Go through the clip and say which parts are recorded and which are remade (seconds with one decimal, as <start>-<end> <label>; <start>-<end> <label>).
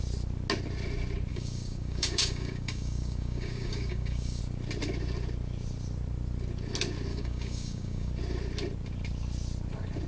0.0-1.3 recorded; 1.3-4.4 remade; 4.4-7.1 recorded; 7.1-8.1 remade; 8.1-10.1 recorded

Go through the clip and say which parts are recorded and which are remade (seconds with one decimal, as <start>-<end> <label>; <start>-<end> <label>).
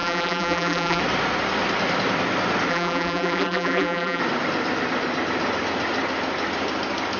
0.0-1.0 remade; 1.0-2.7 recorded; 2.7-4.2 remade; 4.2-7.2 recorded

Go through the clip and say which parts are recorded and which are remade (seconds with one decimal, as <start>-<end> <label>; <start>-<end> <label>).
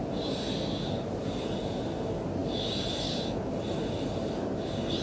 0.0-5.0 recorded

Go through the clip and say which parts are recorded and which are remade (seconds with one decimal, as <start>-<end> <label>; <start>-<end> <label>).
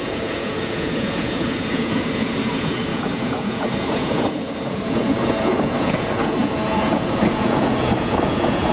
0.0-8.7 remade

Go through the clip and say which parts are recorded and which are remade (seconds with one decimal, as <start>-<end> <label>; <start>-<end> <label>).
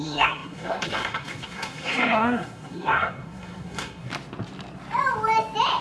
0.0-4.1 remade; 4.1-5.8 recorded